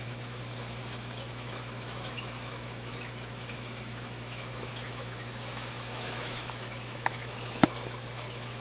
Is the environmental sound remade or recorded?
remade